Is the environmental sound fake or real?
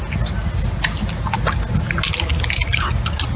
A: real